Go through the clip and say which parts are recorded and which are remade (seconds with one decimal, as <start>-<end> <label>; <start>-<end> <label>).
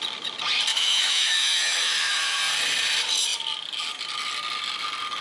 0.0-0.7 recorded; 0.7-2.4 remade; 2.4-5.2 recorded